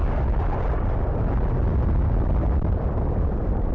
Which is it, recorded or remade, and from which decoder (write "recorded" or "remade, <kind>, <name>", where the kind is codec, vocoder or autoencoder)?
recorded